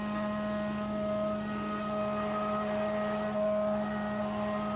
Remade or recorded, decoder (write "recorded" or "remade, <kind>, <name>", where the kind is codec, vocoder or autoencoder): recorded